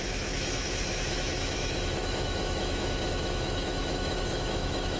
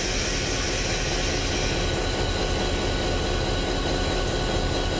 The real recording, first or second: second